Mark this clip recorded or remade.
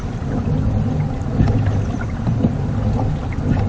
recorded